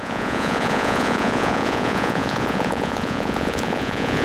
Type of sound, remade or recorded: remade